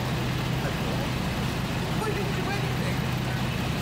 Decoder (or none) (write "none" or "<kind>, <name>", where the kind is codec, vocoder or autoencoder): none